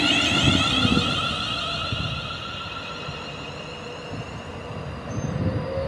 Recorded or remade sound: recorded